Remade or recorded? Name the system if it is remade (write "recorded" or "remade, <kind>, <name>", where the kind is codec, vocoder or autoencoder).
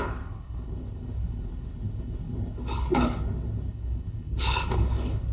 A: remade, codec, HILCodec